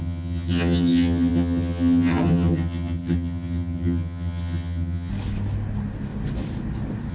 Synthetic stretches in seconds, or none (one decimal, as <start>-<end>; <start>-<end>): 0.0-5.1